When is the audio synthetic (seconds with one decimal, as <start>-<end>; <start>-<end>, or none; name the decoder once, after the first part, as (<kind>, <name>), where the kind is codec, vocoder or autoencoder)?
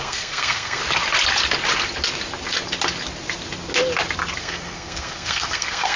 0.0-0.8 (codec, SNAC); 4.4-6.0